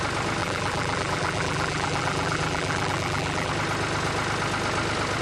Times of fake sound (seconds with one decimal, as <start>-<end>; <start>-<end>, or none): 0.4-3.5